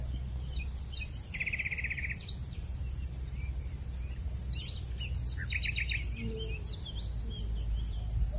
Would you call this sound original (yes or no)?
yes